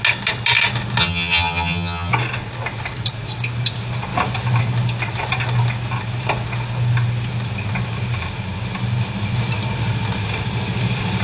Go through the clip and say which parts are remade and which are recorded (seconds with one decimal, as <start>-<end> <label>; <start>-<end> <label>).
0.0-1.0 recorded; 1.0-2.1 remade; 2.1-11.2 recorded

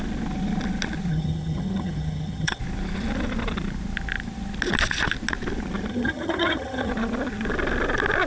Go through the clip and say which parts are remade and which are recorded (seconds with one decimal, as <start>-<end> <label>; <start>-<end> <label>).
0.0-1.1 recorded; 1.1-2.6 remade; 2.6-5.9 recorded; 5.9-6.9 remade; 6.9-8.3 recorded